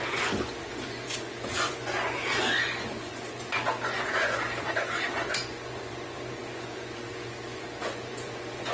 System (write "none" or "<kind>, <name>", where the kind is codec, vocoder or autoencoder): vocoder, Vocos